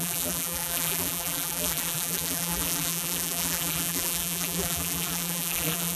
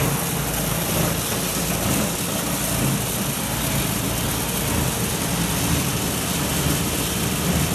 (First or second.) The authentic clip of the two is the second